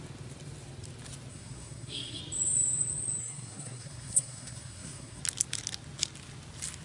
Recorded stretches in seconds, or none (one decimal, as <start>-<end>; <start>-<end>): 0.0-1.3; 2.2-3.2; 5.2-6.8